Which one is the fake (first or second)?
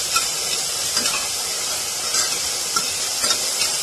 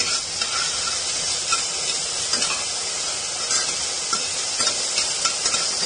first